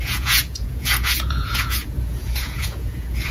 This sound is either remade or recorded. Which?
remade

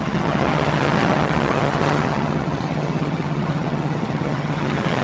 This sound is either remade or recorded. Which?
remade